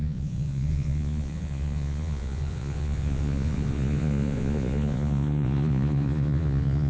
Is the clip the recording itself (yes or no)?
no